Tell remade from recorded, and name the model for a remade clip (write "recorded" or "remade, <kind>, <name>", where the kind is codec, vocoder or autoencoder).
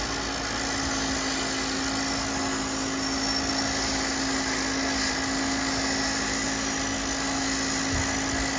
recorded